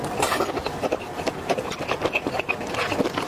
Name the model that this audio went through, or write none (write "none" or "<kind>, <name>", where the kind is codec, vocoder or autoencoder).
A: none